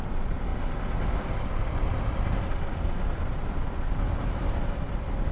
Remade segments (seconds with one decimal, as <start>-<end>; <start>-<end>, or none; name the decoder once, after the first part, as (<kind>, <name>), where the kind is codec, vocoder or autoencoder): none